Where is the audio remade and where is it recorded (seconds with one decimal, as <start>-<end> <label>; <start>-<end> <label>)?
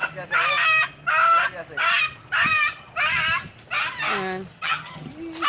0.0-4.5 recorded; 4.5-5.1 remade; 5.1-5.5 recorded